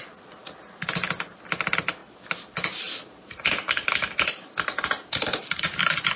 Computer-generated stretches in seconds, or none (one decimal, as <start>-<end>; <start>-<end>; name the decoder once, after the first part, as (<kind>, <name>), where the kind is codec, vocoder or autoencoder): none